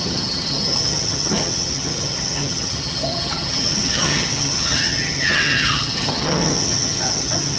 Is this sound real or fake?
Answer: fake